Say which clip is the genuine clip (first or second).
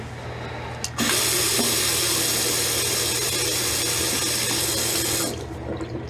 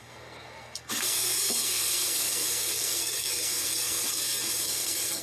first